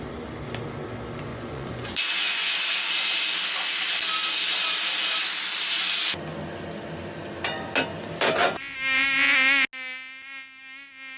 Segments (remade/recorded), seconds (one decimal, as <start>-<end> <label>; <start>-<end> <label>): 0.0-1.3 recorded; 1.3-2.8 remade; 2.8-11.2 recorded